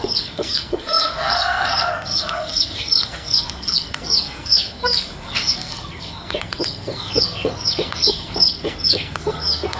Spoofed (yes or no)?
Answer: yes